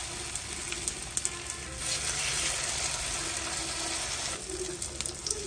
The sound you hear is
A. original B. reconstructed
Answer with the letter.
A